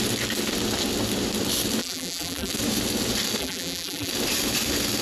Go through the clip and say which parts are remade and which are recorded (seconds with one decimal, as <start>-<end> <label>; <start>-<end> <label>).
0.0-1.8 recorded; 1.8-2.5 remade; 2.5-3.4 recorded; 3.4-4.1 remade; 4.1-5.0 recorded

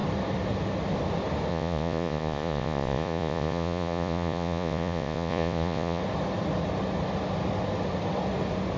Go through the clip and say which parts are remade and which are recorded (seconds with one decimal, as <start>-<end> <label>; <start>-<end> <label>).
0.0-1.5 recorded; 1.5-6.0 remade; 6.0-8.8 recorded

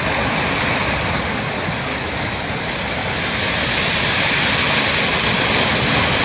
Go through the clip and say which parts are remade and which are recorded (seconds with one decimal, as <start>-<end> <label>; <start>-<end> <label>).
0.0-1.9 recorded; 1.9-2.4 remade; 2.4-6.2 recorded

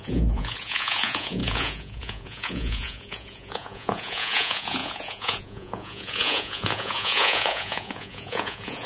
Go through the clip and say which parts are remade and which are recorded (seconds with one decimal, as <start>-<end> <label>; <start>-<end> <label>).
0.0-8.9 remade

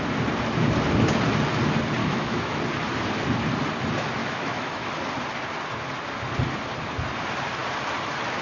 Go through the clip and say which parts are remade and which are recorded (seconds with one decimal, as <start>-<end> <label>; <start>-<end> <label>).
0.0-2.0 recorded; 2.0-2.6 remade; 2.6-4.2 recorded; 4.2-4.9 remade; 4.9-8.4 recorded

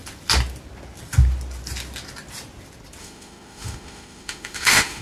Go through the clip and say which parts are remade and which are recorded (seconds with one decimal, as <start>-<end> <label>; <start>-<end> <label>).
0.0-3.0 recorded; 3.0-5.0 remade

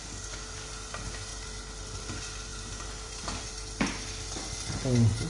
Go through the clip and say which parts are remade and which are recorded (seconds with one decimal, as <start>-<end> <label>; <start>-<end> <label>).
0.0-1.3 recorded; 1.3-1.8 remade; 1.8-2.5 recorded; 2.5-3.5 remade; 3.5-5.3 recorded

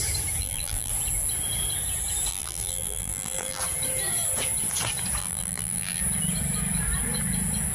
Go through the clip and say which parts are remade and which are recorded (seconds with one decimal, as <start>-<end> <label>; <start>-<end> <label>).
0.0-0.4 recorded; 0.4-0.9 remade; 0.9-2.3 recorded; 2.3-3.6 remade; 3.6-5.2 recorded; 5.2-6.0 remade; 6.0-7.7 recorded